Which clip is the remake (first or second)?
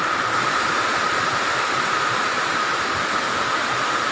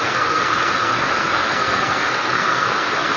second